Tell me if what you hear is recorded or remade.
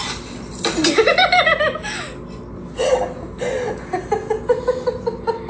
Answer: recorded